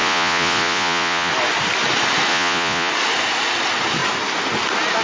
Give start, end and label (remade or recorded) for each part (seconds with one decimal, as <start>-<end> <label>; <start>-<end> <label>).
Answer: 0.0-1.3 remade; 1.3-2.3 recorded; 2.3-2.9 remade; 2.9-5.0 recorded